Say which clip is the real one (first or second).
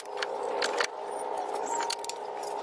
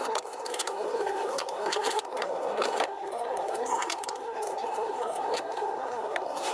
first